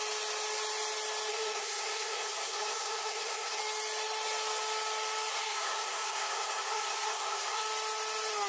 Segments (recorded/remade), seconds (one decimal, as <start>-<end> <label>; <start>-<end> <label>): 0.0-1.3 recorded; 1.3-3.6 remade; 3.6-5.3 recorded; 5.3-7.6 remade; 7.6-8.5 recorded